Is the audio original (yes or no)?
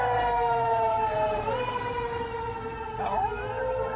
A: yes